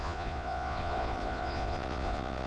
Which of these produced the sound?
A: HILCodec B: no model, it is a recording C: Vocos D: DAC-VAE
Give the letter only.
C